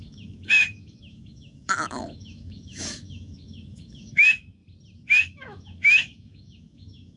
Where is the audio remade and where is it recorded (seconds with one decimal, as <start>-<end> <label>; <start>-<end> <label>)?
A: 0.0-4.6 remade; 4.6-5.2 recorded; 5.2-7.2 remade